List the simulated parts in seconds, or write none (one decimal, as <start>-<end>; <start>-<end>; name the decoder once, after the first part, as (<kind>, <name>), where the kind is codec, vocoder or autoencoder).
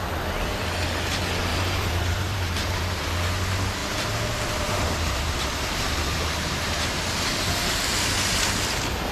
1.5-3.0 (vocoder, BigVGAN v2); 3.8-6.9